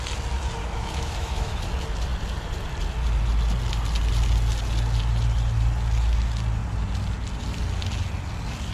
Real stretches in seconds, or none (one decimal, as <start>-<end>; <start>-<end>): 0.0-0.6; 1.6-8.7